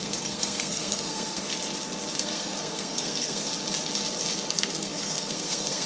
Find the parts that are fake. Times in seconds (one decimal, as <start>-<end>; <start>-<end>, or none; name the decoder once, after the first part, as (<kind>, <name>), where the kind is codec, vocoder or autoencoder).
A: 0.0-1.5 (codec, SNAC); 2.1-3.5; 4.5-5.9